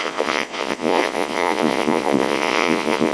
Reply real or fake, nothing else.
fake